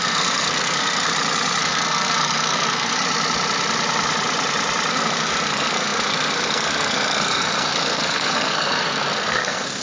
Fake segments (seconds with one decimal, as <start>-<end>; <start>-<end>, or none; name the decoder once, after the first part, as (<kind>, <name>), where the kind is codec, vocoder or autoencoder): 0.0-1.1 (codec, SNAC); 1.6-3.0; 4.9-9.8